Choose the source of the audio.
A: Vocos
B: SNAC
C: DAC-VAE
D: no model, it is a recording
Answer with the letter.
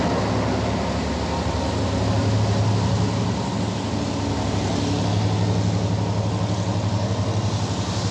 D